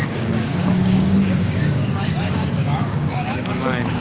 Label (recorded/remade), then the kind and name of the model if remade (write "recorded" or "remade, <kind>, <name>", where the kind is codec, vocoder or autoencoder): remade, codec, DAC